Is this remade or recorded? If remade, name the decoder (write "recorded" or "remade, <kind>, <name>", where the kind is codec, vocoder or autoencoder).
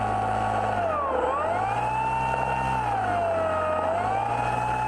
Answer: recorded